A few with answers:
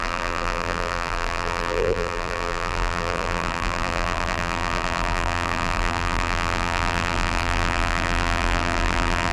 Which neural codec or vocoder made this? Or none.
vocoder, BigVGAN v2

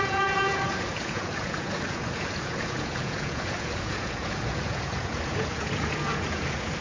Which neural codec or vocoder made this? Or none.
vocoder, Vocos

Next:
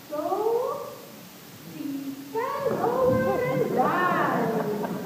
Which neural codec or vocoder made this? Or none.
none